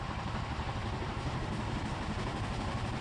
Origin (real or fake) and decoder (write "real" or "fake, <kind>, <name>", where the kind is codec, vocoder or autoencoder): real